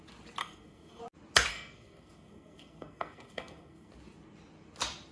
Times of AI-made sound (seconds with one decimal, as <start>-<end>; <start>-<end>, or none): 0.4-1.0; 1.5-3.9

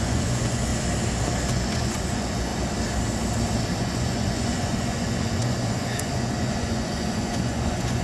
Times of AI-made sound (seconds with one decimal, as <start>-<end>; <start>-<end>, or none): 0.0-0.7; 1.5-2.5; 3.8-8.0

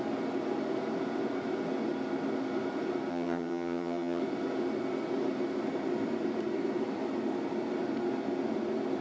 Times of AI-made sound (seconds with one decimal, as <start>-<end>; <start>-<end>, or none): 3.1-4.2

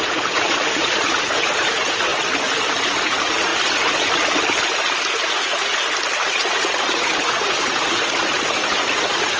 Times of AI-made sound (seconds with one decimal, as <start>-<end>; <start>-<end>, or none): 0.0-2.1; 2.7-3.5; 5.1-5.7; 6.3-9.4